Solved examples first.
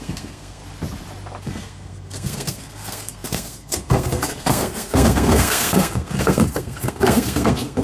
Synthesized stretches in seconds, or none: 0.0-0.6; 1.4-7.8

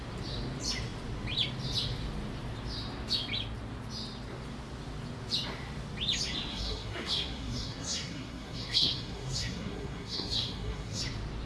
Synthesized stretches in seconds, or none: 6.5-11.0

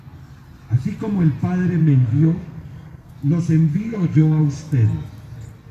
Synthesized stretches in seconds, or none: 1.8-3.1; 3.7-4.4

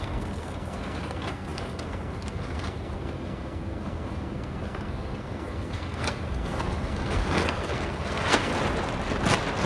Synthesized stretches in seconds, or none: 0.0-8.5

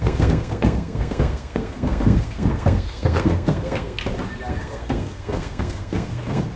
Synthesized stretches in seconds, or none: 0.0-4.0; 4.5-6.6

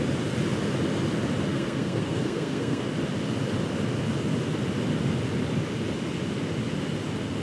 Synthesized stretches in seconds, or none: 1.5-2.8